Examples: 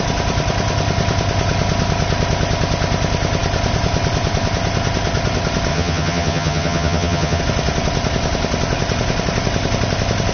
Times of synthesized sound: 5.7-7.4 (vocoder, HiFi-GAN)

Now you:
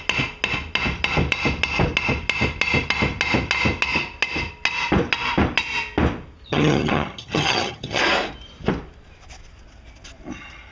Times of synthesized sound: 6.5-8.0 (vocoder, HiFi-GAN)

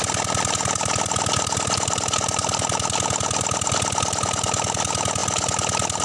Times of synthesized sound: none

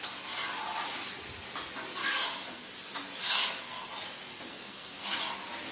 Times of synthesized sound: 2.0-2.7 (codec, SNAC); 3.2-3.9; 4.3-5.2